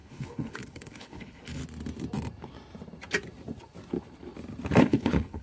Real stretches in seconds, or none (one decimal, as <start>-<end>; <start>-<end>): 1.6-4.8